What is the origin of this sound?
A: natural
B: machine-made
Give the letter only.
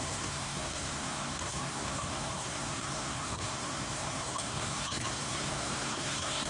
B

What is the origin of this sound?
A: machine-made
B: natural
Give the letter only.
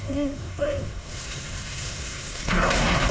A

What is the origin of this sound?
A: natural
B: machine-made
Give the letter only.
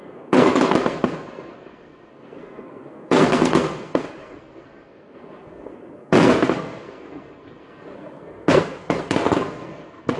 B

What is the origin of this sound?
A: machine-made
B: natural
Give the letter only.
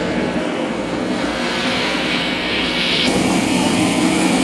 A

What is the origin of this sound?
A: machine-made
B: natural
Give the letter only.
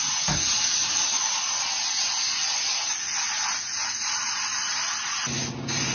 B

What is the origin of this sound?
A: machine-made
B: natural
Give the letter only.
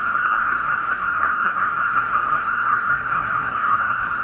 A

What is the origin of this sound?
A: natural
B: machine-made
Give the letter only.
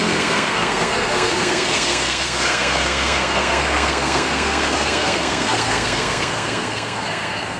B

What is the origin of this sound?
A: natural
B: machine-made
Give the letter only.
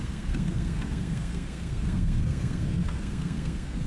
B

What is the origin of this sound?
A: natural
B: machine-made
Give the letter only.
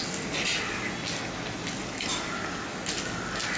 A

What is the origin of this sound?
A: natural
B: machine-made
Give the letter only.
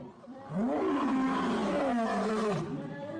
A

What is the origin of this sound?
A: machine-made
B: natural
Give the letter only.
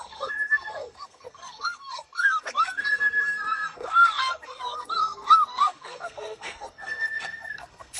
A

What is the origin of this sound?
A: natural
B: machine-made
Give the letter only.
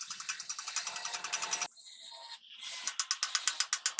A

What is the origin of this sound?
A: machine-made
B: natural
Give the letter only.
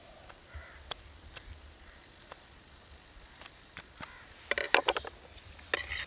B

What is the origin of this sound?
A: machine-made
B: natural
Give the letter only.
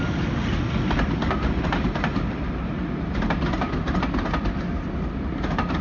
B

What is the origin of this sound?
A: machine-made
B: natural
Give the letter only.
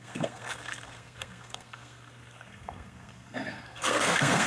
A